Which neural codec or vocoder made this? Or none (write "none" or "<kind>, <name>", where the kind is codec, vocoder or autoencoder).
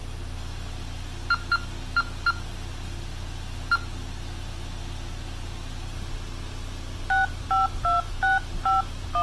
none